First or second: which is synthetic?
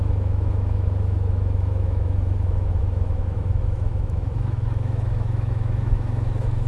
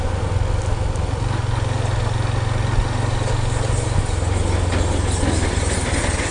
first